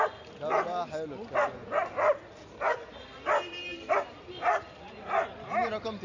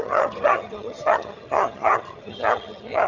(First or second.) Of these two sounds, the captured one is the first